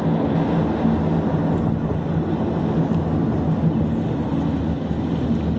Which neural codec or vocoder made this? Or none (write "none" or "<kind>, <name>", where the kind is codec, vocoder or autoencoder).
none